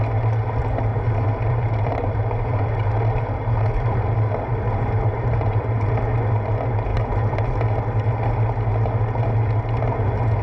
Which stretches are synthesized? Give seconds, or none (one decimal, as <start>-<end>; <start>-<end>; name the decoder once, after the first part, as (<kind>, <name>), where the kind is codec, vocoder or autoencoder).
0.9-5.7 (vocoder, BigVGAN v2)